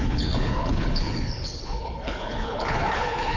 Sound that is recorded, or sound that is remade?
remade